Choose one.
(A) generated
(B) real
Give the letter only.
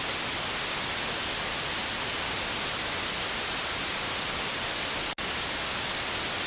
B